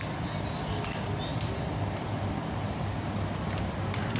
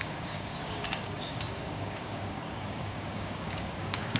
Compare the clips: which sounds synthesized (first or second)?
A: second